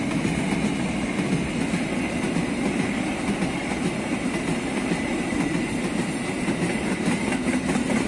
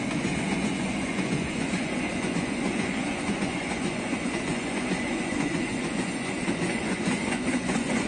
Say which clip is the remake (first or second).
second